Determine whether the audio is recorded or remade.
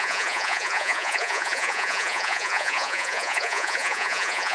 remade